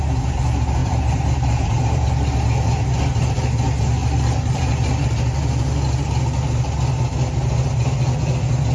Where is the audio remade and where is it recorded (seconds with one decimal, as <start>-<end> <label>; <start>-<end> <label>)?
0.0-0.8 recorded; 0.8-2.1 remade; 2.1-4.0 recorded; 4.0-4.9 remade; 4.9-8.7 recorded